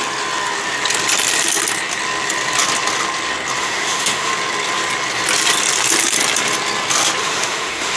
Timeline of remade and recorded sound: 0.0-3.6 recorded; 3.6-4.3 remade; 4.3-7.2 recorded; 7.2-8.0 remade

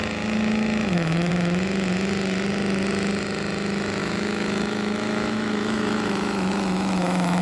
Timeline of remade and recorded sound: 0.0-1.3 remade; 1.3-4.0 recorded; 4.0-7.4 remade

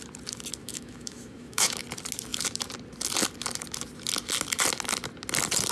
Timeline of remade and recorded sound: 0.0-0.6 recorded; 0.6-1.8 remade; 1.8-5.7 recorded

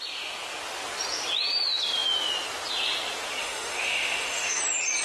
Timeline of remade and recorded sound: 0.0-3.4 recorded; 3.4-4.6 remade; 4.6-5.0 recorded

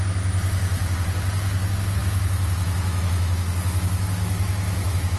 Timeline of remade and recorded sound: 0.0-2.0 recorded; 2.0-5.2 remade

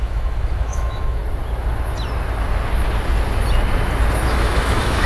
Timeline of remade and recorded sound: 0.0-1.2 remade; 1.2-4.3 recorded; 4.3-5.1 remade